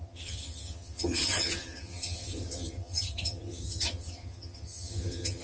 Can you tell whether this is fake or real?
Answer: fake